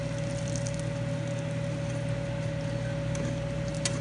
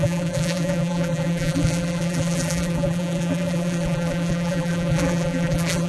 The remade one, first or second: second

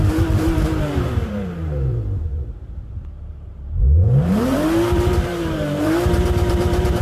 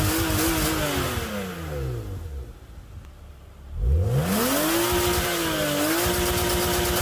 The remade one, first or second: first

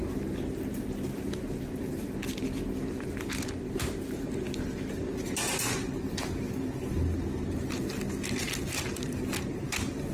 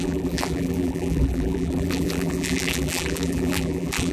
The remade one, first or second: second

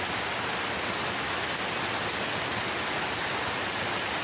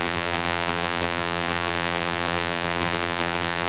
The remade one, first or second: second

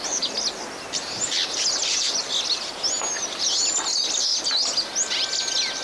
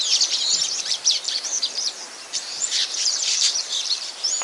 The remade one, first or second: second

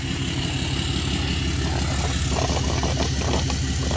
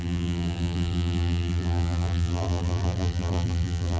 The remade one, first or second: second